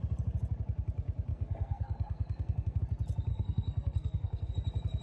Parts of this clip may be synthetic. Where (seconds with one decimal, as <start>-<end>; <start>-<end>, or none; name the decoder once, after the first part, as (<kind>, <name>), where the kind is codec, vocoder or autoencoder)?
1.3-2.8 (codec, SNAC); 3.3-4.5